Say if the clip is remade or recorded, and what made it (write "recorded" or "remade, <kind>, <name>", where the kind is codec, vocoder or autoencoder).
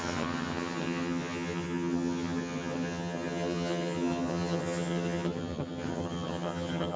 remade, vocoder, HiFi-GAN